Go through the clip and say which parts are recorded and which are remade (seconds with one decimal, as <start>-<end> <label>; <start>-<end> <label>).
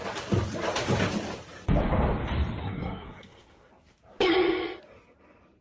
0.0-2.6 recorded; 2.6-3.7 remade; 3.7-5.6 recorded